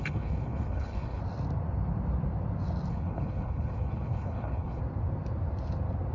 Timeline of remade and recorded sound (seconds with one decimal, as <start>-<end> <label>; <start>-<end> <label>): 0.0-1.2 remade; 1.2-2.9 recorded; 2.9-4.8 remade; 4.8-6.1 recorded